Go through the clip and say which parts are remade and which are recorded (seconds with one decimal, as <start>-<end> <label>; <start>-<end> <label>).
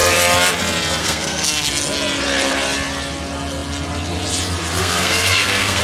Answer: 0.0-1.0 recorded; 1.0-1.7 remade; 1.7-4.8 recorded; 4.8-5.8 remade